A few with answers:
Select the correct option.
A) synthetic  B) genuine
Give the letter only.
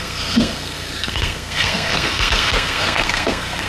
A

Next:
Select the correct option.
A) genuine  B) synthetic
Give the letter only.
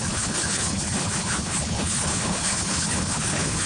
B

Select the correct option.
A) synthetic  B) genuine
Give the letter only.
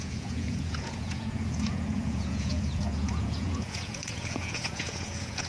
A